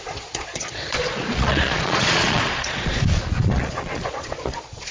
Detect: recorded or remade remade